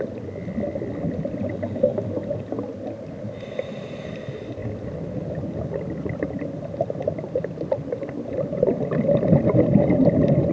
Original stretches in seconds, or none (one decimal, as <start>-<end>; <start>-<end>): 0.0-10.5